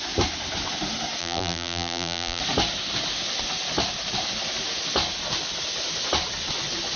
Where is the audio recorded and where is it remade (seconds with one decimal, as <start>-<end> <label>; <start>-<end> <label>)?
0.0-1.2 recorded; 1.2-2.4 remade; 2.4-7.0 recorded